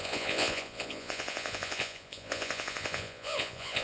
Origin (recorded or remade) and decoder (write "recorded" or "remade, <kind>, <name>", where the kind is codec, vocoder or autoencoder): remade, vocoder, Vocos